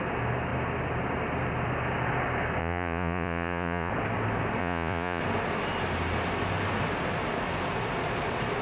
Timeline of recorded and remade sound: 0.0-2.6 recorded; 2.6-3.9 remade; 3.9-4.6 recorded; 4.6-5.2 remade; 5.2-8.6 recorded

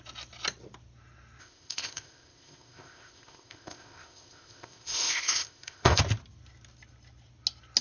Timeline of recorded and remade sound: 0.0-1.4 recorded; 1.4-6.0 remade; 6.0-7.8 recorded

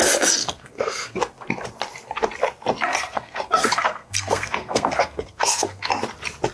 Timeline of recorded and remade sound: 0.0-0.4 recorded; 0.4-1.2 remade; 1.2-2.9 recorded; 2.9-5.9 remade; 5.9-6.5 recorded

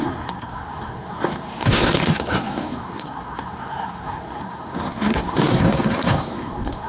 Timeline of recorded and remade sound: 0.0-6.9 remade

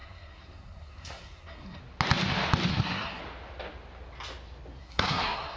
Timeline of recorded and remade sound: 0.0-1.8 remade; 1.8-2.7 recorded; 2.7-3.2 remade; 3.2-4.8 recorded; 4.8-5.6 remade

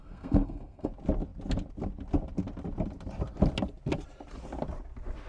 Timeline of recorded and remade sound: 0.0-0.9 remade; 0.9-5.3 recorded